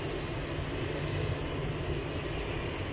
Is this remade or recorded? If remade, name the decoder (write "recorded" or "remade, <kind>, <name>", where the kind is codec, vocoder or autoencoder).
recorded